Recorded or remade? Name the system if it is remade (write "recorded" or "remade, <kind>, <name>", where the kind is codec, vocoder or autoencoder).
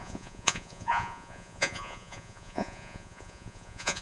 remade, vocoder, Vocos